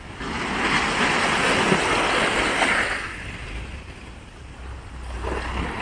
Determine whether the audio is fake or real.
real